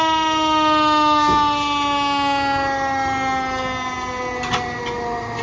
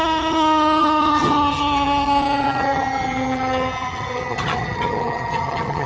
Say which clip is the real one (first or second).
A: first